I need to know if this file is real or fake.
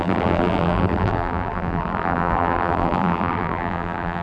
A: fake